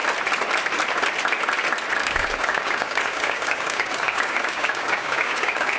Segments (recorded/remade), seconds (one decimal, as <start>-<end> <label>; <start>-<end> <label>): 0.0-2.0 recorded; 2.0-5.8 remade